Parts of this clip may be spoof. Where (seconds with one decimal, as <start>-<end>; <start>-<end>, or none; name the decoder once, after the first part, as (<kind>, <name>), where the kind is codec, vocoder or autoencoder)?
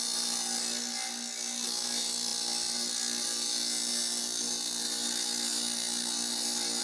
none